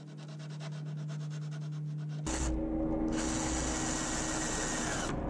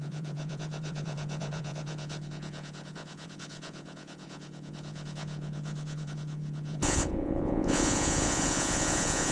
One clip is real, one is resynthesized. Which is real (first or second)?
first